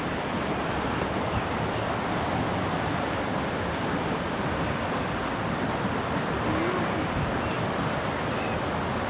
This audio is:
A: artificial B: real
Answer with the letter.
B